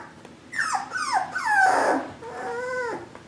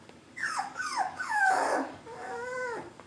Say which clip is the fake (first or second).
second